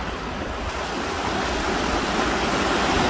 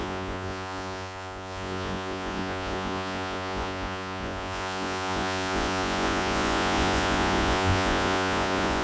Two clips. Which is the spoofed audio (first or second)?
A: second